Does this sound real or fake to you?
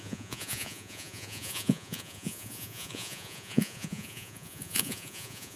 fake